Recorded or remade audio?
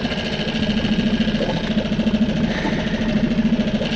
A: recorded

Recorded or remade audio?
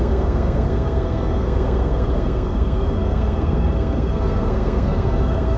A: remade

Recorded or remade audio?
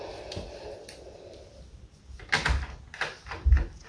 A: recorded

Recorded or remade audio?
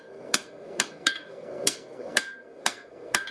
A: remade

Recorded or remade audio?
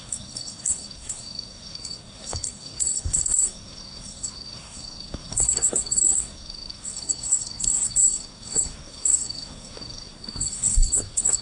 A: remade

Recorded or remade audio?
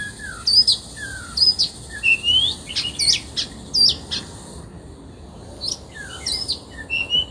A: recorded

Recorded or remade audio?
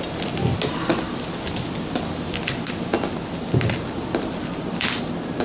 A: recorded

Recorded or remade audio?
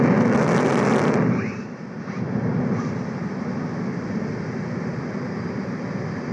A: recorded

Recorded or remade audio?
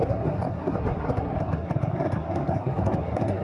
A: remade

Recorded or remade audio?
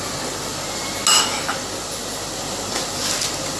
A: recorded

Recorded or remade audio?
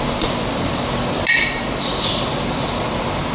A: recorded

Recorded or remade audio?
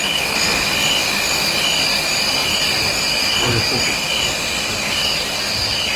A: recorded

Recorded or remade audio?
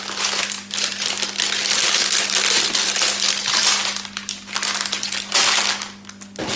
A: recorded